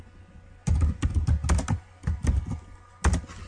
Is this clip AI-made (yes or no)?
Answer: no